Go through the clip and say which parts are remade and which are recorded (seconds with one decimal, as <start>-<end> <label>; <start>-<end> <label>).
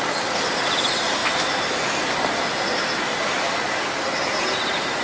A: 0.0-5.0 recorded